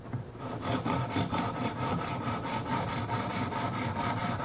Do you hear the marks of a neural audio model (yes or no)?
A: no